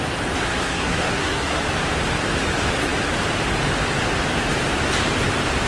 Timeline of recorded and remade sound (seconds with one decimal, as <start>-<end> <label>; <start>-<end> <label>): 0.0-0.4 recorded; 0.4-1.6 remade; 1.6-5.7 recorded